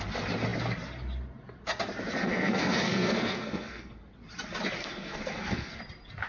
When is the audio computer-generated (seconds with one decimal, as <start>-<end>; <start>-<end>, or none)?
2.2-4.0; 4.8-5.8